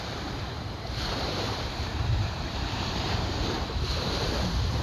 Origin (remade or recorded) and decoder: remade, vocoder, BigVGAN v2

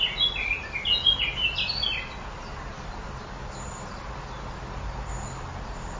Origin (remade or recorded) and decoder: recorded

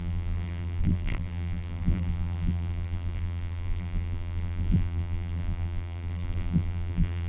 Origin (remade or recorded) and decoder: remade, vocoder, BigVGAN v2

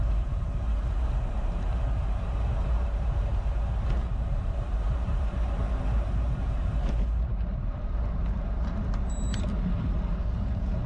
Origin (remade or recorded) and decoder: remade, vocoder, BigVGAN v2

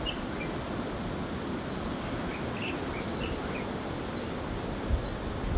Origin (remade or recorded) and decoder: recorded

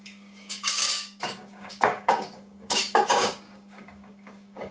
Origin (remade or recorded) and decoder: remade, codec, DAC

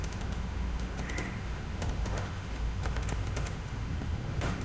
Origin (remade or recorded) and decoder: remade, autoencoder, DAC-VAE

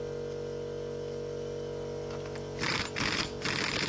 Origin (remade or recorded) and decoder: recorded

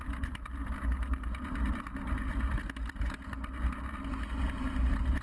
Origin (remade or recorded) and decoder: recorded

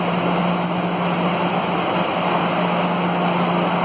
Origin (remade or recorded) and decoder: recorded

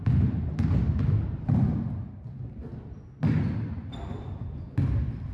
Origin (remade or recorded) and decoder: recorded